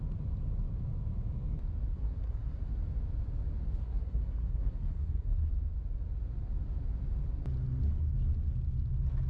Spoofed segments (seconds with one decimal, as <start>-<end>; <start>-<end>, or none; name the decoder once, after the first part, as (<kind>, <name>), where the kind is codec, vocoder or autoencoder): 1.9-2.7 (codec, SNAC); 3.8-5.5